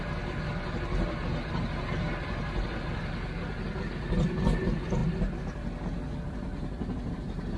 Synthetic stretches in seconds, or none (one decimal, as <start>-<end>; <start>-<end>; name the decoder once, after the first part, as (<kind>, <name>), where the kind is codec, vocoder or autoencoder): none